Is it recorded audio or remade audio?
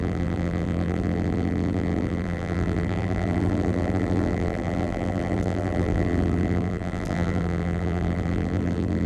remade